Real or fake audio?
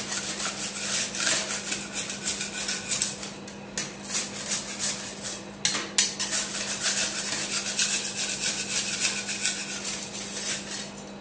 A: real